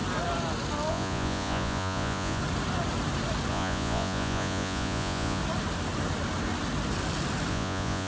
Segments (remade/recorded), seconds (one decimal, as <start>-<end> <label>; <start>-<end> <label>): 0.0-0.9 recorded; 0.9-2.4 remade; 2.4-3.5 recorded; 3.5-5.4 remade; 5.4-7.5 recorded; 7.5-8.1 remade